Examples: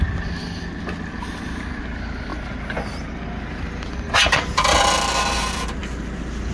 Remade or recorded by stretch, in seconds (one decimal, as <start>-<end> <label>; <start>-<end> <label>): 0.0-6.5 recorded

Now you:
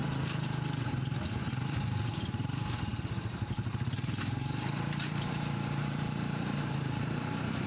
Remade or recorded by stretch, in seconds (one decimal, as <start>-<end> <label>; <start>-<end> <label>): 0.0-2.9 recorded; 2.9-7.7 remade

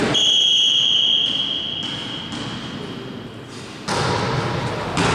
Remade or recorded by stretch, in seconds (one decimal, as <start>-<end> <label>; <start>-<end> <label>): 0.0-5.1 recorded

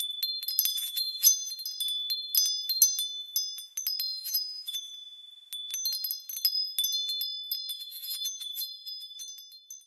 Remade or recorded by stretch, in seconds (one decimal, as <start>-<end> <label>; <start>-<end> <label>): 0.0-0.7 recorded; 0.7-1.5 remade; 1.5-4.1 recorded; 4.1-4.9 remade; 4.9-7.7 recorded; 7.7-9.2 remade; 9.2-9.9 recorded

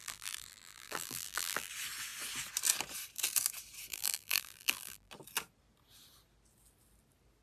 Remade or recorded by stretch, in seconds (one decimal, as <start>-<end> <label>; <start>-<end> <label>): 0.0-1.7 remade; 1.7-3.9 recorded; 3.9-5.1 remade; 5.1-7.4 recorded